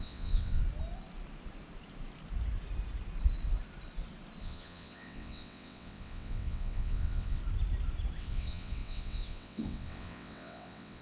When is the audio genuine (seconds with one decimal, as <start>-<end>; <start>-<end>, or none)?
0.6-4.4; 7.4-8.2

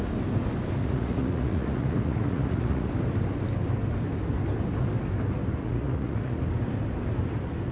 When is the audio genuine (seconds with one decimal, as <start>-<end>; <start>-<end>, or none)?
0.0-0.8; 2.9-5.6; 6.4-7.7

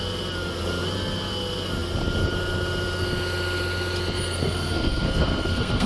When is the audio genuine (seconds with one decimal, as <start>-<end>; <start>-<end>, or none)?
0.0-4.4

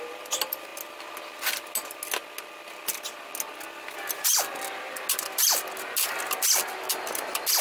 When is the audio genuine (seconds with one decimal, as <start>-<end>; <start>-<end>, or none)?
0.0-7.6